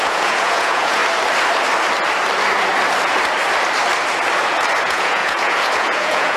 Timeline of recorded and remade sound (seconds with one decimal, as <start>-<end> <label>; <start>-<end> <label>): 0.0-1.0 remade; 1.0-4.8 recorded; 4.8-6.4 remade